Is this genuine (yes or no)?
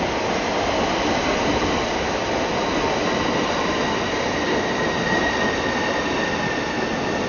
yes